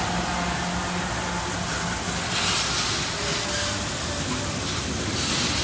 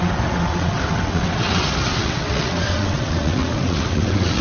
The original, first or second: first